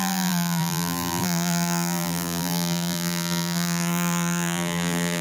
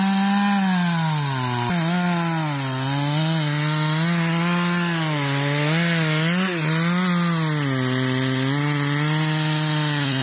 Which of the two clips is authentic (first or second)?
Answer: second